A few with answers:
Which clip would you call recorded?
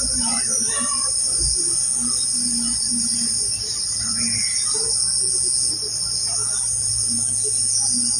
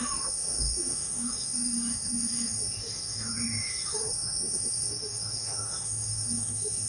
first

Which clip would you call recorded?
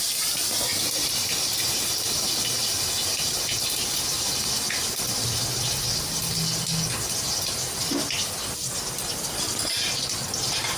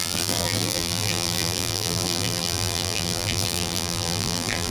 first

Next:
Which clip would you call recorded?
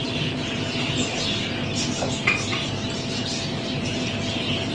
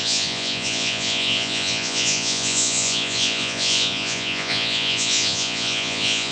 first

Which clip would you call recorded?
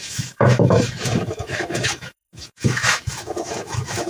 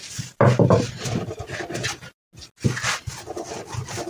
second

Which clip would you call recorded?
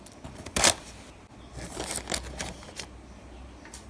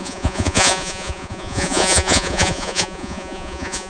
first